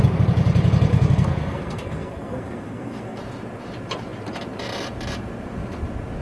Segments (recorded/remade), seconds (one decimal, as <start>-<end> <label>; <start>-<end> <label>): 0.0-0.9 recorded; 0.9-3.2 remade; 3.2-6.2 recorded